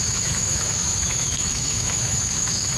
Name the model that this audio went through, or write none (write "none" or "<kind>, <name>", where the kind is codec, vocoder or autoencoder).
autoencoder, DAC-VAE